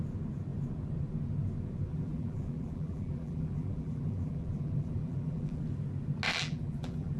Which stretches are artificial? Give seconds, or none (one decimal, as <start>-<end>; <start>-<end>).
1.9-5.6; 6.3-7.2